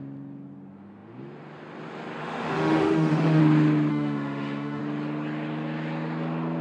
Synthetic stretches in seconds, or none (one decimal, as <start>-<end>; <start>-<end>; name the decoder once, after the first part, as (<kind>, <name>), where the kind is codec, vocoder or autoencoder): 2.2-3.4 (autoencoder, DAC-VAE); 3.9-4.8